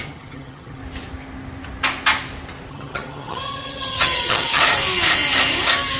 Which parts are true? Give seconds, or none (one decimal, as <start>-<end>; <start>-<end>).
0.8-2.7; 4.6-6.0